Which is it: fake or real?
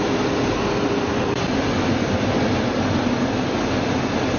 real